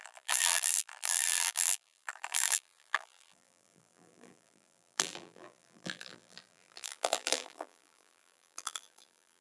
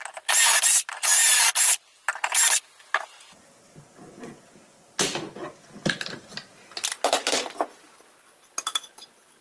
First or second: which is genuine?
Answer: second